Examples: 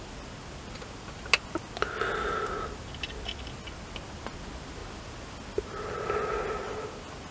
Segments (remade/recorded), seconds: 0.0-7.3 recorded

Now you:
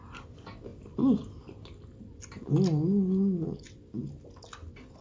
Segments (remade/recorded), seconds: 0.0-5.0 recorded